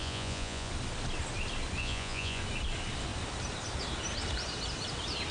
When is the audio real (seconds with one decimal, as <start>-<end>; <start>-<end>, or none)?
0.7-1.8; 2.4-5.3